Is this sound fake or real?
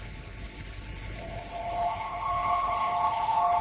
fake